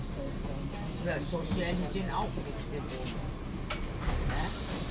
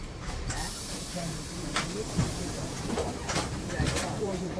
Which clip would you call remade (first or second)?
second